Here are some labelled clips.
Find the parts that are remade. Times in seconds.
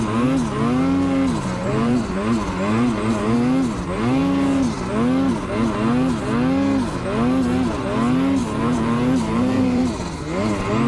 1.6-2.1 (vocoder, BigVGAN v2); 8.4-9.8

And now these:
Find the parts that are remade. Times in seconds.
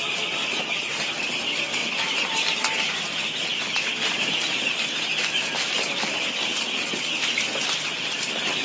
none